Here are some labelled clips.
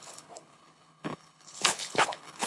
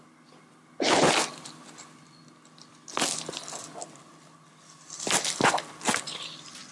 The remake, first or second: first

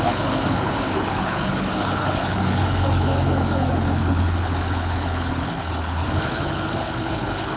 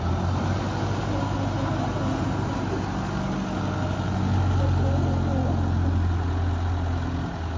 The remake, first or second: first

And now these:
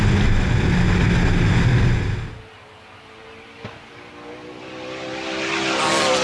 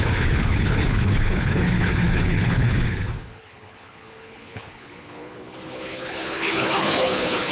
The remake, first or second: second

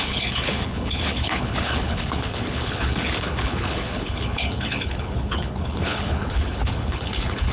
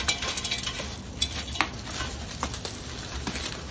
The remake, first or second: first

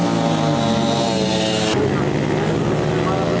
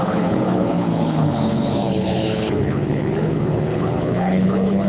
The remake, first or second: second